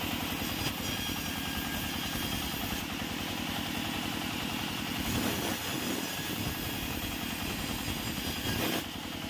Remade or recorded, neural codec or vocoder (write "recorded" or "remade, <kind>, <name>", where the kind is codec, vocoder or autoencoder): recorded